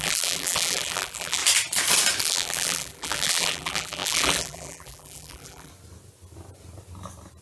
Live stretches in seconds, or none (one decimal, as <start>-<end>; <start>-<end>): 1.4-2.2; 5.7-7.4